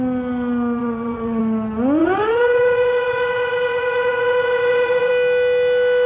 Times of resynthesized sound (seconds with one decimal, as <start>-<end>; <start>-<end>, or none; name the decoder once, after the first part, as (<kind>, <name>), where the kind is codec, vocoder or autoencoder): 0.8-1.4 (vocoder, WaveNeXt); 2.0-5.1